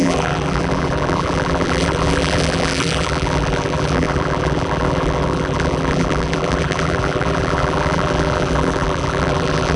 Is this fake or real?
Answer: fake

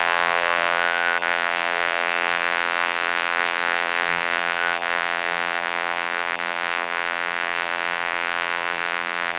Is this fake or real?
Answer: fake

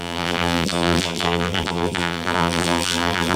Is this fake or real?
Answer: fake